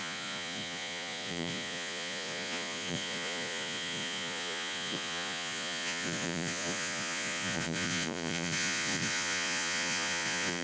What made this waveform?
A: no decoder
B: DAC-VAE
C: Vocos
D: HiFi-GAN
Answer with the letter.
C